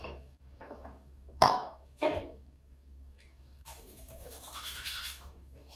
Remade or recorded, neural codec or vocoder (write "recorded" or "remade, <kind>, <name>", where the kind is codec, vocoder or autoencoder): remade, codec, DAC